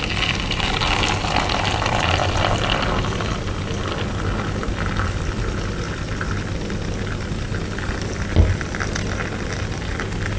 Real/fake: real